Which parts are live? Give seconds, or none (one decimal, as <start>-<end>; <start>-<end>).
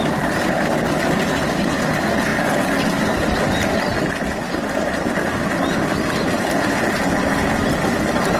0.0-8.4